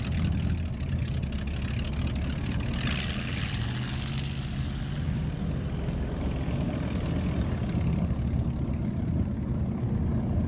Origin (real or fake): real